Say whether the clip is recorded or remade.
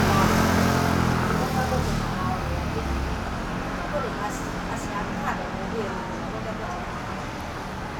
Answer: recorded